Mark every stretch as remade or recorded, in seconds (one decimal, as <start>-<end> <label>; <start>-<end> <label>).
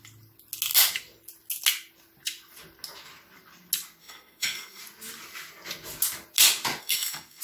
0.0-4.0 recorded; 4.0-4.8 remade; 4.8-6.8 recorded; 6.8-7.4 remade